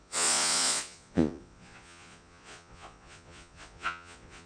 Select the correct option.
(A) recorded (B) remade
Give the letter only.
B